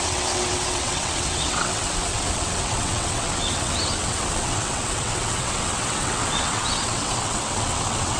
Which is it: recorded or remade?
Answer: remade